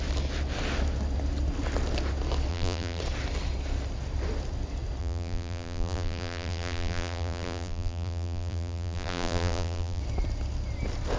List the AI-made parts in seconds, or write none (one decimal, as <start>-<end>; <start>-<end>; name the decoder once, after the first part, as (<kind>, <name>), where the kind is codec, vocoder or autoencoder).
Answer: 2.5-3.0 (vocoder, BigVGAN v2); 5.0-10.0